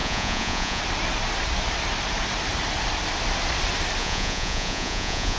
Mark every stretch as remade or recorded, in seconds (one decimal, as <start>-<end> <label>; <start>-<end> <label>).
0.0-0.8 remade; 0.8-4.0 recorded; 4.0-5.4 remade